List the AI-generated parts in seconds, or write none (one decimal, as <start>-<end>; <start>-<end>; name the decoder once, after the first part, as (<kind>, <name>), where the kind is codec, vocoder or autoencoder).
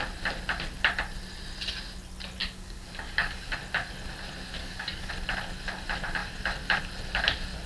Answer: 2.4-3.5 (codec, DAC); 4.6-5.1